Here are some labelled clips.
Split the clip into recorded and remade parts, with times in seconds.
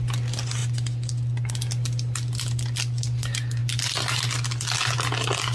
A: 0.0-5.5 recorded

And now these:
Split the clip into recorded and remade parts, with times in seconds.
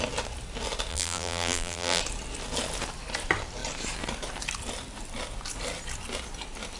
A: 0.0-0.9 recorded; 0.9-2.0 remade; 2.0-6.8 recorded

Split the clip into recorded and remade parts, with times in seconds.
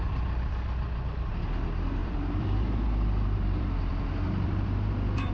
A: 0.0-2.0 recorded; 2.0-5.3 remade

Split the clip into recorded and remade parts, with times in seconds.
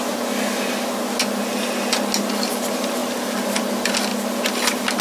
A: 0.0-5.0 recorded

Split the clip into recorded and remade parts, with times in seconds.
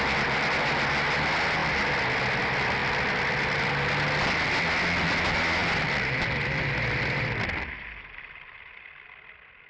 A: 0.0-9.7 recorded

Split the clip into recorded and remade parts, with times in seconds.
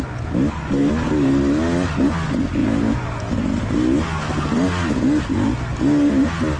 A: 0.0-6.6 recorded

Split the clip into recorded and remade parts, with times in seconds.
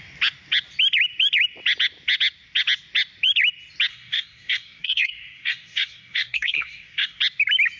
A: 0.0-3.9 recorded; 3.9-7.2 remade; 7.2-7.8 recorded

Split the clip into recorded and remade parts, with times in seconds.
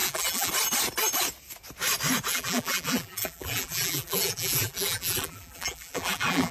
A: 0.0-0.5 remade; 0.5-2.3 recorded; 2.3-6.5 remade